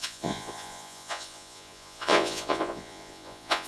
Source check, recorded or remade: remade